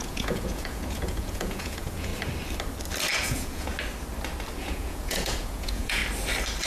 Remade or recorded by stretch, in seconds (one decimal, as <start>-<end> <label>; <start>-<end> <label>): 0.0-2.1 remade; 2.1-3.2 recorded; 3.2-3.7 remade; 3.7-4.6 recorded; 4.6-6.0 remade; 6.0-6.7 recorded